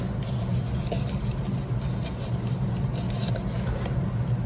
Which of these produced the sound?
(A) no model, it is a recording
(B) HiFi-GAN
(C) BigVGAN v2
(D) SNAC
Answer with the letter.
A